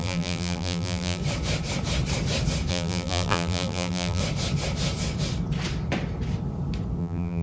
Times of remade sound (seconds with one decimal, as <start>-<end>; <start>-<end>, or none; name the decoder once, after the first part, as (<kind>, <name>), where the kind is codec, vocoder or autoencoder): 0.0-1.2 (vocoder, BigVGAN v2); 2.7-4.2; 7.0-7.4